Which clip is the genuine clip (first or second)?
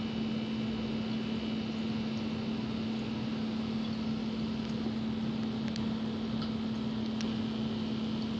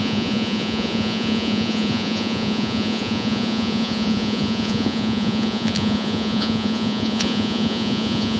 first